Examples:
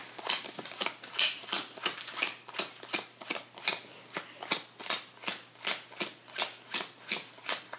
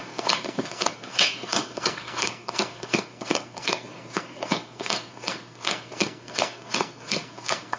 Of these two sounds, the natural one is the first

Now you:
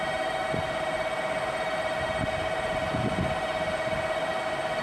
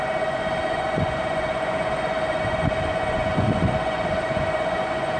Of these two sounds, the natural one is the first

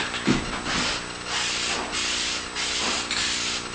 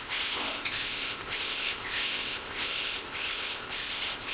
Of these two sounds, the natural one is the first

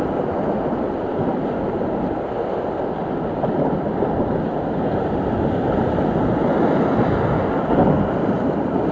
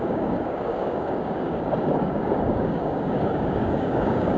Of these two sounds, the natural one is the first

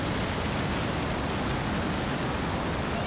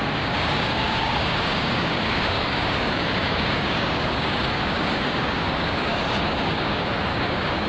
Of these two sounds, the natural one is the first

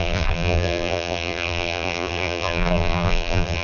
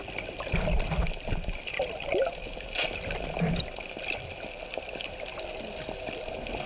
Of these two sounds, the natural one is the second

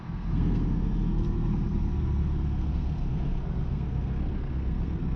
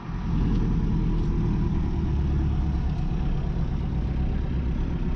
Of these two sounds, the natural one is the second